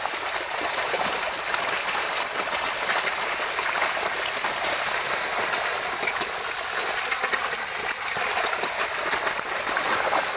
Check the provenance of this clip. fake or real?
real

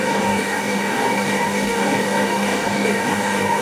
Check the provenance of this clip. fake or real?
fake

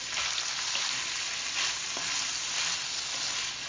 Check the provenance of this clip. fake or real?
real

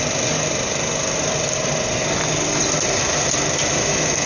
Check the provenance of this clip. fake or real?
real